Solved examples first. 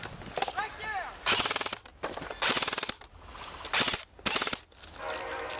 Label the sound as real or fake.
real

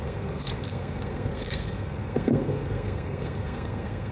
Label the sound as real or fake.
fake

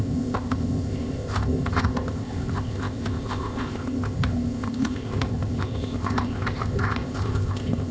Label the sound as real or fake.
fake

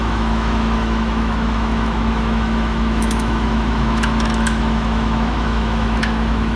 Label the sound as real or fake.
fake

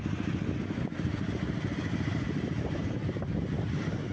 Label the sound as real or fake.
real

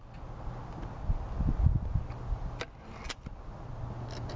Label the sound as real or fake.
real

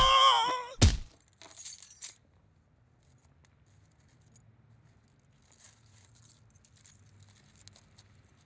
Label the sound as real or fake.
real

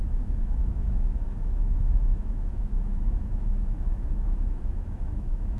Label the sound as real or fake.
fake